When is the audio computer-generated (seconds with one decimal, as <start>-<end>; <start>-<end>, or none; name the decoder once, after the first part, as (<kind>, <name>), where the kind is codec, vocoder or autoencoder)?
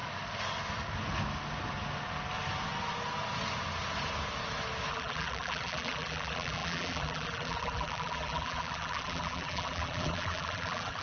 4.9-11.0 (vocoder, BigVGAN v2)